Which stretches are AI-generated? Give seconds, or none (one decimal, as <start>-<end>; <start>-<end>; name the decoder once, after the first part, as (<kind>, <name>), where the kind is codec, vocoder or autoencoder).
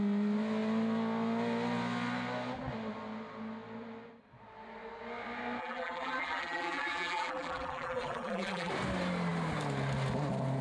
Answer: 5.6-8.7 (vocoder, BigVGAN v2)